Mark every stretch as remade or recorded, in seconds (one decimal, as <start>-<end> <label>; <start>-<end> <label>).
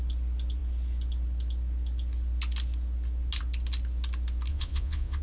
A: 0.0-4.5 recorded; 4.5-5.2 remade